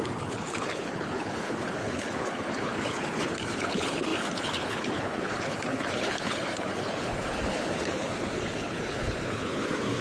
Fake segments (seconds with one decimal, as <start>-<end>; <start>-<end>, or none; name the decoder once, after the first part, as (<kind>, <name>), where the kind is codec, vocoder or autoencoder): 0.0-10.0 (codec, HILCodec)